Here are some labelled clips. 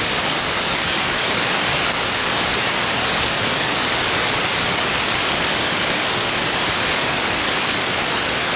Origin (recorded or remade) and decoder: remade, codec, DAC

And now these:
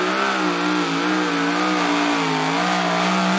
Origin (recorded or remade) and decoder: recorded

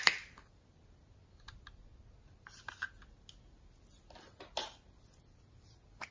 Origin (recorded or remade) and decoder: recorded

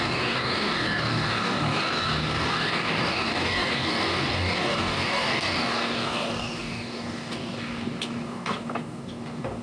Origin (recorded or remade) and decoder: remade, codec, DAC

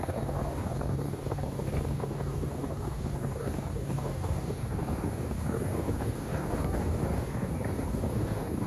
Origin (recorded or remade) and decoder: remade, codec, DAC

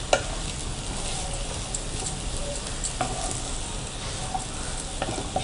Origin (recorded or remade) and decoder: recorded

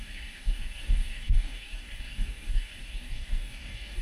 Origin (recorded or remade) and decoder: remade, codec, DAC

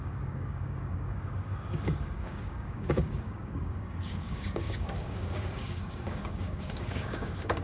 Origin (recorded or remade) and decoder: remade, codec, DAC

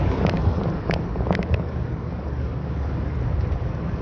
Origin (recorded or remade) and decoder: remade, codec, DAC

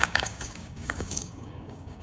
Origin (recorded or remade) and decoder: remade, codec, DAC